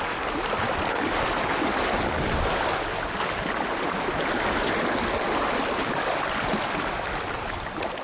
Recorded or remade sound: recorded